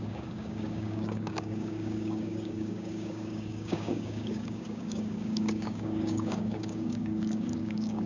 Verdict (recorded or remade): remade